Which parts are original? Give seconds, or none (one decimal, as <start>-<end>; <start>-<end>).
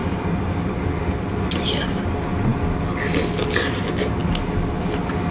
0.0-5.3